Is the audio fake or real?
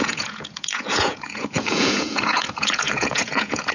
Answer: fake